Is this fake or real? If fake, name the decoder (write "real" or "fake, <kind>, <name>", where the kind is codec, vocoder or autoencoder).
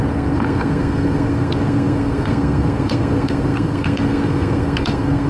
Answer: fake, codec, SNAC